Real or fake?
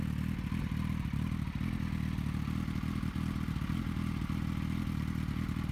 real